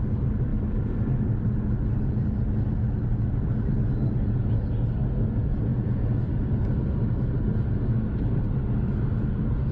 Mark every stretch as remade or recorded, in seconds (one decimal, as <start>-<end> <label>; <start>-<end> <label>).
0.0-5.7 recorded; 5.7-6.2 remade; 6.2-9.7 recorded